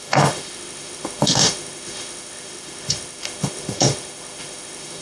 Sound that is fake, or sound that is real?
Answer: fake